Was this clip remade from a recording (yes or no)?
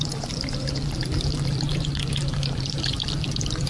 yes